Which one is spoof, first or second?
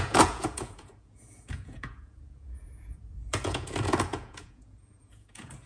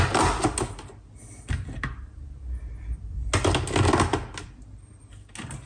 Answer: first